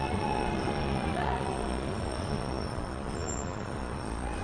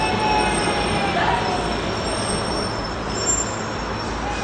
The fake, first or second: first